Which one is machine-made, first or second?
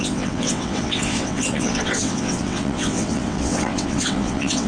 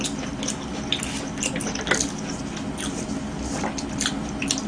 first